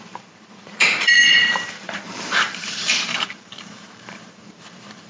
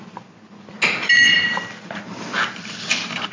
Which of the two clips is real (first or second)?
second